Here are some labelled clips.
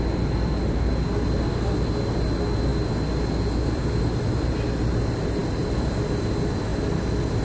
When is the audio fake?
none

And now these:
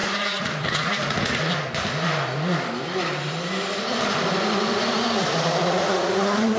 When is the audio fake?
0.0-1.5 (vocoder, Vocos); 5.6-6.6

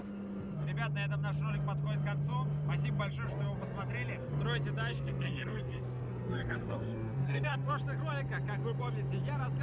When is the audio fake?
4.9-7.7 (codec, SNAC)

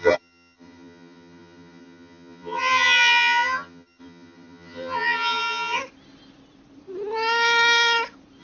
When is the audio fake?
0.0-5.8 (vocoder, HiFi-GAN)

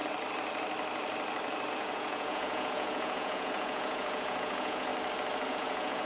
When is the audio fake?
1.7-4.9 (vocoder, Vocos); 5.5-6.1

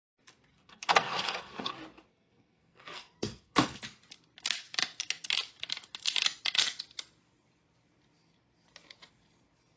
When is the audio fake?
0.5-1.7 (codec, SNAC); 2.1-3.8

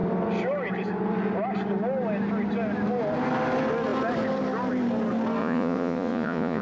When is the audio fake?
5.4-6.6 (vocoder, Vocos)